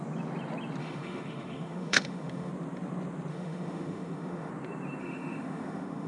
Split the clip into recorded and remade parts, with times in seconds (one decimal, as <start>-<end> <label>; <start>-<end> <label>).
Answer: 0.0-0.8 recorded; 0.8-2.5 remade; 2.5-3.3 recorded; 3.3-4.5 remade; 4.5-5.0 recorded; 5.0-6.1 remade